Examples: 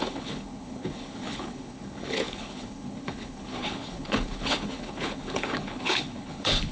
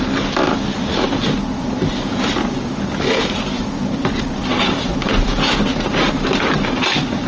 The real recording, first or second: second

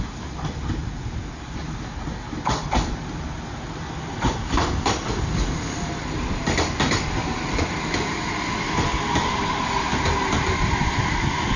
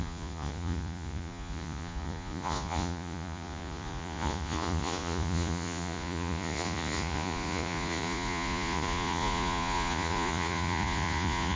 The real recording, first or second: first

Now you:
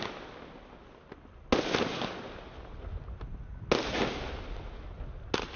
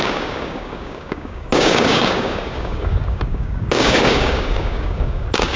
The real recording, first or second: first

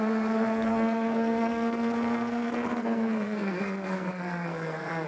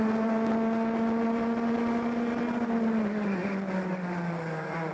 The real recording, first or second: second